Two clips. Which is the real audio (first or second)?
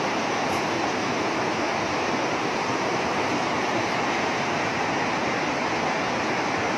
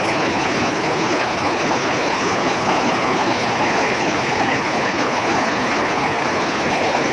first